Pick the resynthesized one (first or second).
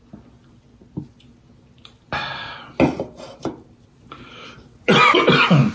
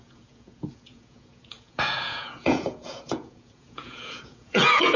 second